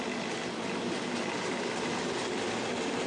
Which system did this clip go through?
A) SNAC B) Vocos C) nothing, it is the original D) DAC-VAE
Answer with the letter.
C